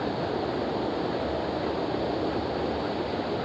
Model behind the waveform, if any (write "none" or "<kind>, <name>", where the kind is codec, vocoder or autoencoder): none